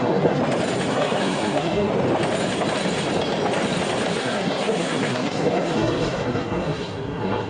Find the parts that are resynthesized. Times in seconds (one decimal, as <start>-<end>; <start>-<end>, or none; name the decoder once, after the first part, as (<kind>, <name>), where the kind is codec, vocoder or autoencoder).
0.0-0.4 (codec, SNAC); 0.9-1.9; 4.2-7.5